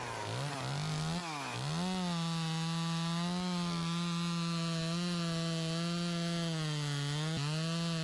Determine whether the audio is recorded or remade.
recorded